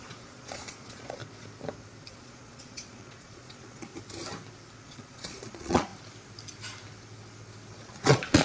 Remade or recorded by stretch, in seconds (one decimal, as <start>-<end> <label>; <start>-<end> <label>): 0.0-1.2 remade; 1.2-2.1 recorded; 2.1-3.9 remade; 3.9-4.7 recorded; 4.7-5.9 remade; 5.9-7.8 recorded; 7.8-8.4 remade